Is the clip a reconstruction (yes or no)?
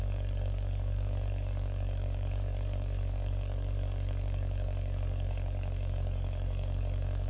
yes